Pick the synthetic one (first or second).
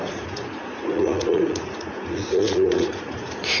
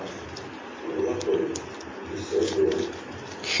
first